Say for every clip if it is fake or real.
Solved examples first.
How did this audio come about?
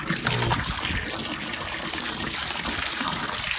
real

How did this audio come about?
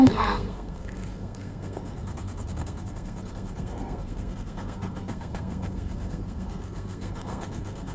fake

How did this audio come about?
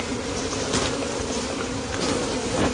real